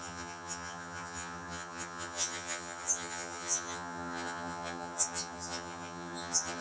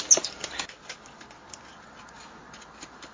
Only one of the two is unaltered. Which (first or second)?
second